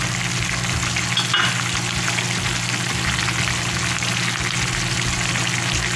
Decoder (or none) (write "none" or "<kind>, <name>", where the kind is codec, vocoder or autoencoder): none